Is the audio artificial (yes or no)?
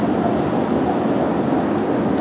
no